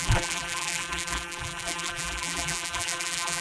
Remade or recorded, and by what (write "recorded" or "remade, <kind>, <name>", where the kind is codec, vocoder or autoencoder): remade, vocoder, BigVGAN v2